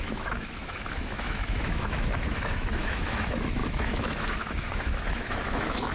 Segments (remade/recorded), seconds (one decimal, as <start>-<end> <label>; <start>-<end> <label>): 0.0-5.9 remade